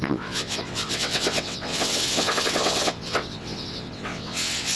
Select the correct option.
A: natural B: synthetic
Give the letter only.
B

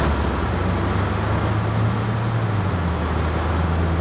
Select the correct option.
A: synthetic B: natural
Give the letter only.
B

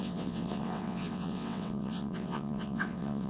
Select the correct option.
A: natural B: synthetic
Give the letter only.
B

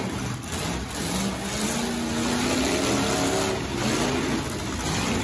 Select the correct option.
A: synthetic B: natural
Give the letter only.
B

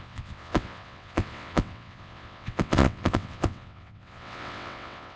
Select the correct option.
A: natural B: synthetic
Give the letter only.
B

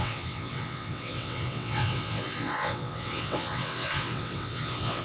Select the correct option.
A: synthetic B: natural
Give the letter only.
A